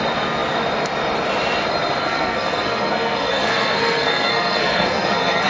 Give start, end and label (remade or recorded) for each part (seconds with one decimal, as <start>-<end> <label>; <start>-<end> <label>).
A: 0.0-2.0 recorded; 2.0-5.5 remade